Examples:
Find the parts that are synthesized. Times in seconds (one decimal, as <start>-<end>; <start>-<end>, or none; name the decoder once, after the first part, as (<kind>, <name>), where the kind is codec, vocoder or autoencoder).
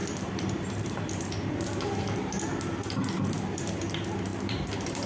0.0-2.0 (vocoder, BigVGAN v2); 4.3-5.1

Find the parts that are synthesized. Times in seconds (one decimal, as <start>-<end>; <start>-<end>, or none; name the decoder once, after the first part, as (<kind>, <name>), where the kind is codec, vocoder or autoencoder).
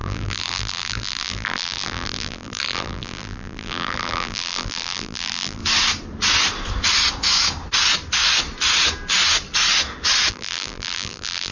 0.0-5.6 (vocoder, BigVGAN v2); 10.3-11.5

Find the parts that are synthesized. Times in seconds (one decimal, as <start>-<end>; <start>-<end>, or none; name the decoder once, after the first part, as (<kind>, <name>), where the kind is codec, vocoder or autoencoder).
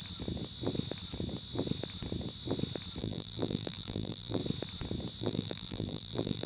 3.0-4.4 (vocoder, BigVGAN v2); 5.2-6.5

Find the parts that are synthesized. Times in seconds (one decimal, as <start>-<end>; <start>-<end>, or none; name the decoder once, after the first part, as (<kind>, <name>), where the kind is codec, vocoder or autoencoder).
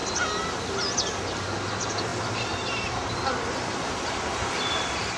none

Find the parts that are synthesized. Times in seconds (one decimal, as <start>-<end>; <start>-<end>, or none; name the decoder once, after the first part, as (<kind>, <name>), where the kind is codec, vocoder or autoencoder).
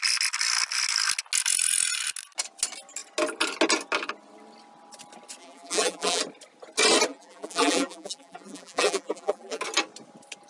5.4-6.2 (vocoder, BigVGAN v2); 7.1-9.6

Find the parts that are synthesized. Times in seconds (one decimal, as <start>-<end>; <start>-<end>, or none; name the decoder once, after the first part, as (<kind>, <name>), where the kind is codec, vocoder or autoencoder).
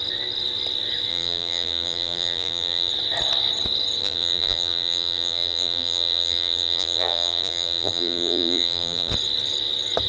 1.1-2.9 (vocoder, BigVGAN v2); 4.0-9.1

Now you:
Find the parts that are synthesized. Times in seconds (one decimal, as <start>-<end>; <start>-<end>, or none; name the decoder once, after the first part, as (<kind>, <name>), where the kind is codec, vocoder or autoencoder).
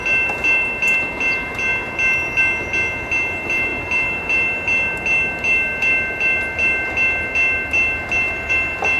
none